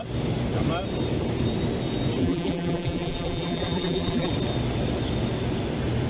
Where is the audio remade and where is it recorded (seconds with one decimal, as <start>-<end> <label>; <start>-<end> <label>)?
0.0-2.2 recorded; 2.2-4.3 remade; 4.3-6.1 recorded